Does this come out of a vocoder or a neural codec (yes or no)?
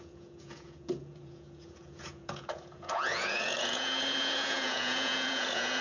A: yes